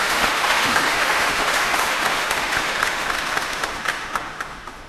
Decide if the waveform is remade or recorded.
remade